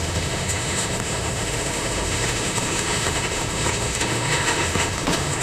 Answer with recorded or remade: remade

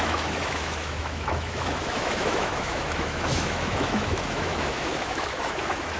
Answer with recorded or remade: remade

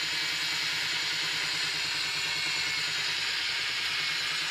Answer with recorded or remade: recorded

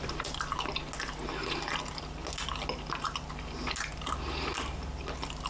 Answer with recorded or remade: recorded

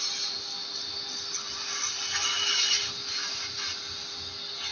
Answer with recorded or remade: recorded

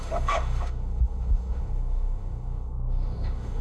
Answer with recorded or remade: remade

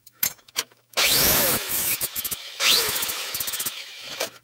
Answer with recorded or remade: remade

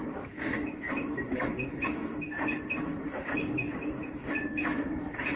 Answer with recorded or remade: remade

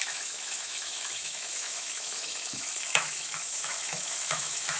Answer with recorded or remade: remade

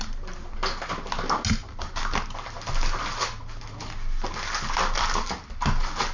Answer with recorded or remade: recorded